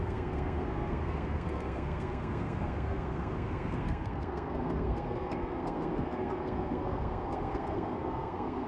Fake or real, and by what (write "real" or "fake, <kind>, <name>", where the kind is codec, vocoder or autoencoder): fake, codec, SNAC